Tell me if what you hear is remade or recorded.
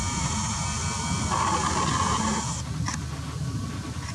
recorded